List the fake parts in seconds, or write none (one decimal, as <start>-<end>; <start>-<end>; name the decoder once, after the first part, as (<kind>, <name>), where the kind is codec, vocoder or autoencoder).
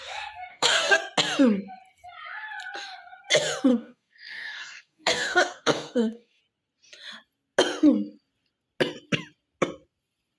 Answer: 0.5-1.0 (codec, DAC); 3.7-6.4